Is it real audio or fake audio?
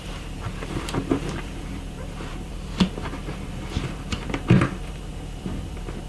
fake